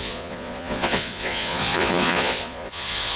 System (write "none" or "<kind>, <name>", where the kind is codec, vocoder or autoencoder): vocoder, Vocos